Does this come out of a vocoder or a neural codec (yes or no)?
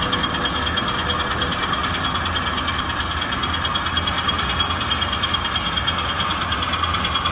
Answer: no